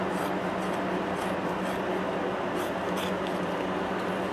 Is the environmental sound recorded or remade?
recorded